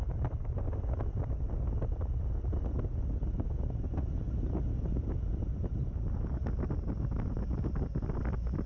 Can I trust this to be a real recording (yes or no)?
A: yes